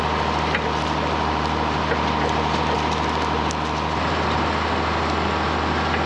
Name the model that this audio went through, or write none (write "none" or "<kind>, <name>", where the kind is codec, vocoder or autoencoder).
none